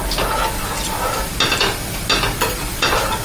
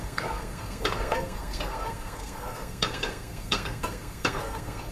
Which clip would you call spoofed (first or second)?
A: second